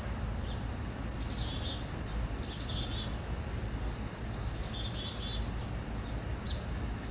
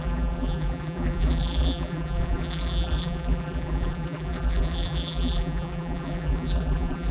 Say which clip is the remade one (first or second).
second